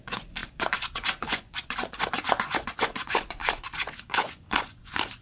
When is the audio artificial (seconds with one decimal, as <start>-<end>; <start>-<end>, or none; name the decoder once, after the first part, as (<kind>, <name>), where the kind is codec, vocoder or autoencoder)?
0.0-5.2 (vocoder, Vocos)